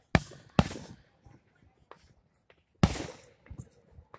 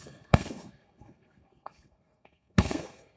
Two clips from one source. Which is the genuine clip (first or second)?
first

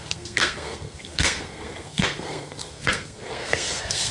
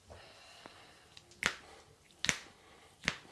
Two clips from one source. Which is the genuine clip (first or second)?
second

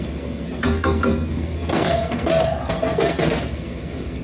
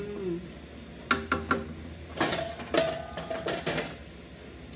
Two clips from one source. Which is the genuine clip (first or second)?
second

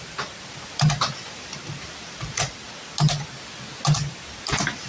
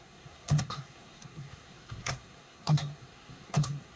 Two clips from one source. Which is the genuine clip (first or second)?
first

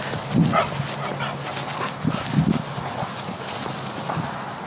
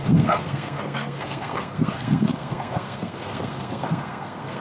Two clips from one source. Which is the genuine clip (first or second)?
first